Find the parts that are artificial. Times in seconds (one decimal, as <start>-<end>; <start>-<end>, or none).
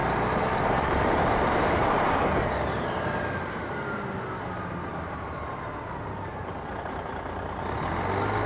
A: 0.0-2.9; 4.9-5.6; 6.3-7.9